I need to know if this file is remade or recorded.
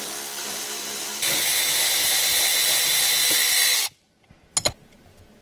recorded